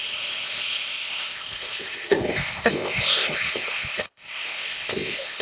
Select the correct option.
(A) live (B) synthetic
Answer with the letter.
B